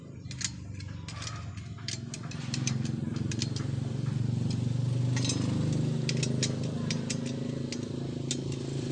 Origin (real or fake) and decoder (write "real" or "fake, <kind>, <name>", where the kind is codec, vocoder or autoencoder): real